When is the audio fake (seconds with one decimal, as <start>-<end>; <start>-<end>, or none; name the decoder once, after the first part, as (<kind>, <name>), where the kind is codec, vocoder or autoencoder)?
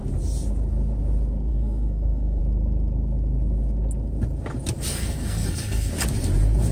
1.5-2.4 (codec, SNAC); 4.9-5.9